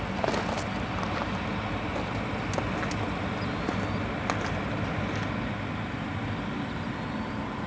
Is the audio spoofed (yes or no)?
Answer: no